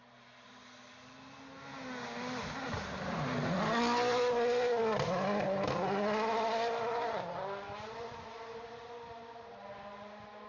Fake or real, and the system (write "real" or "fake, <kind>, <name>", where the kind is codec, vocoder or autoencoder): real